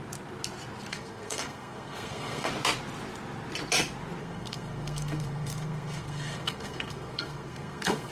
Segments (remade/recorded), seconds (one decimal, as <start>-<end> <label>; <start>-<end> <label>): 0.0-0.9 recorded; 0.9-2.5 remade; 2.5-4.2 recorded; 4.2-8.1 remade